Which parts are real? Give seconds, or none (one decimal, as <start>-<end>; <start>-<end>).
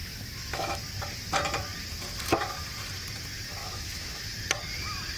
0.8-3.6; 4.3-5.2